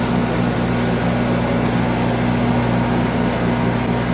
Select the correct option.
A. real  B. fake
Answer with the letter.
A